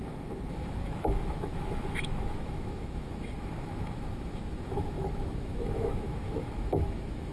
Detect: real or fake fake